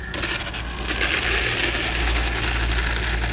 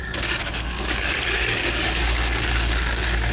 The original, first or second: first